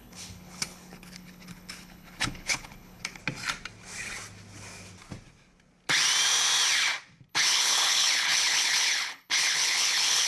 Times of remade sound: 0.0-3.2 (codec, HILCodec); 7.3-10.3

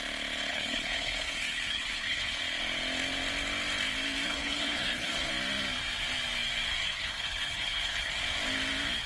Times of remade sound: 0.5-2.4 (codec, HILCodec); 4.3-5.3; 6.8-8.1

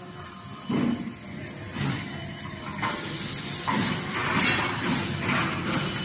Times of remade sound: none

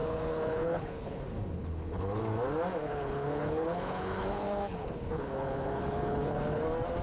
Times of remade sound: 0.0-1.2 (codec, HILCodec); 1.6-2.2; 2.8-6.6

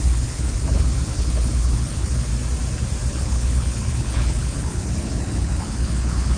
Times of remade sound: 0.0-2.3 (codec, HILCodec); 3.1-6.4

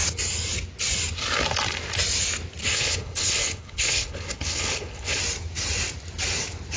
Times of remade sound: 2.6-5.2 (codec, HILCodec)

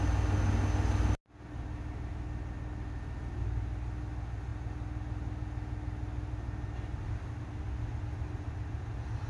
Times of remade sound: none

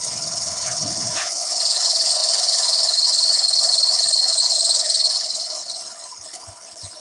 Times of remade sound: 0.0-7.0 (codec, HILCodec)